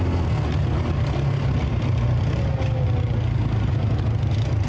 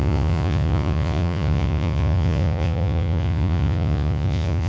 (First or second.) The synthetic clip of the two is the second